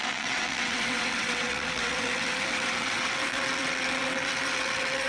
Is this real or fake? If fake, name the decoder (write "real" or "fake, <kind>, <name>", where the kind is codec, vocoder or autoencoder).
fake, vocoder, WaveNeXt